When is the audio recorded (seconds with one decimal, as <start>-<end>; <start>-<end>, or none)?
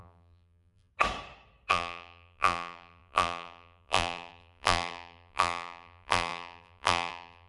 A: 0.9-1.7